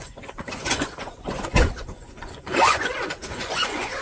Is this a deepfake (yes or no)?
yes